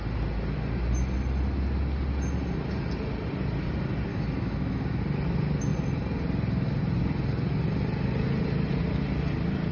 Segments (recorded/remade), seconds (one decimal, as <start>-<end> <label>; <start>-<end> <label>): 0.0-4.1 recorded; 4.1-5.0 remade; 5.0-9.7 recorded